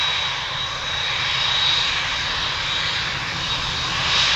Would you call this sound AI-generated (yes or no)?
no